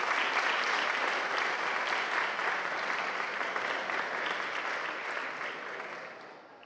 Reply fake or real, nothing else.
real